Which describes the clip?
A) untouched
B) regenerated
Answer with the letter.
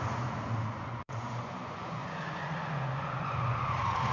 B